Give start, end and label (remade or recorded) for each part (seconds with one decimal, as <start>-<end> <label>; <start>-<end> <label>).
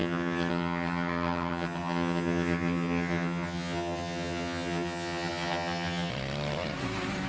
0.0-6.1 remade; 6.1-7.3 recorded